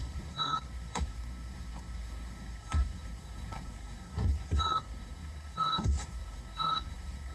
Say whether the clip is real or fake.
fake